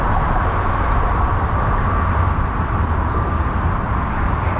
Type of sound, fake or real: real